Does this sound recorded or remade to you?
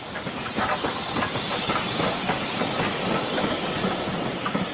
remade